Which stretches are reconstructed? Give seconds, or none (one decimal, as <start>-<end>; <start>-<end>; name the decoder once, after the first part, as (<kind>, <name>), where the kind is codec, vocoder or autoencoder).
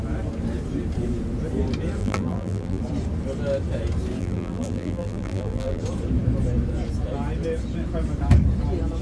2.0-2.8 (vocoder, BigVGAN v2); 4.2-5.8